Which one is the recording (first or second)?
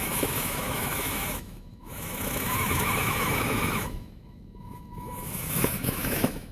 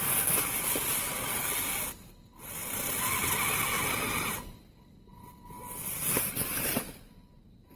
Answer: second